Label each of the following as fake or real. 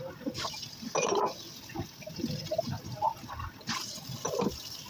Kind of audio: real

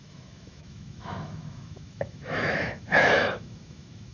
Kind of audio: fake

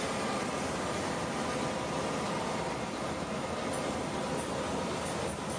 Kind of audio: real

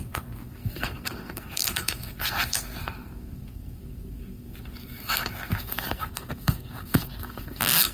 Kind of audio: fake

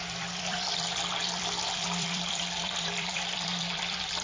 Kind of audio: fake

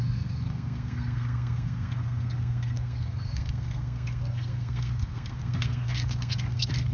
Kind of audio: fake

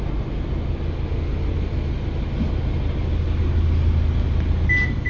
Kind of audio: real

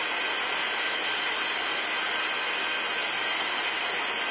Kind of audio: real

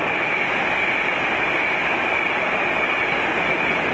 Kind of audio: real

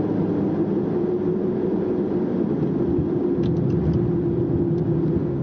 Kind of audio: real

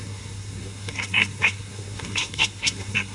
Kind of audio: fake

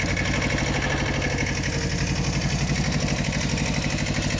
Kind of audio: real